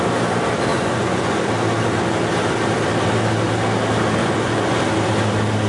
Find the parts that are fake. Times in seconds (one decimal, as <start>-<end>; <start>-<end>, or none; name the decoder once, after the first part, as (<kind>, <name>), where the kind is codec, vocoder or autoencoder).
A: 0.7-1.4 (vocoder, Vocos); 4.2-4.8